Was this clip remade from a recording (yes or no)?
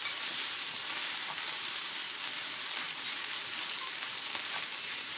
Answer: yes